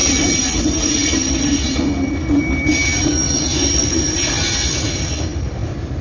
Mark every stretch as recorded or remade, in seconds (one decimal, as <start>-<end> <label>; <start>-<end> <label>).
0.0-6.0 recorded